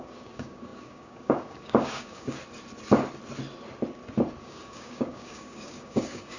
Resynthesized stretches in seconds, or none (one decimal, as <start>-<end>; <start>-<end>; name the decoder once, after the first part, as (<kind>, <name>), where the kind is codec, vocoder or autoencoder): 0.0-2.4 (codec, DAC); 4.4-6.4